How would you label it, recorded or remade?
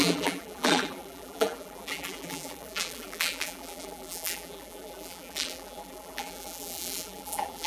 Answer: remade